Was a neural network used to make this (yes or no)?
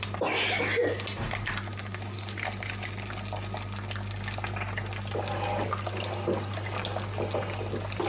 no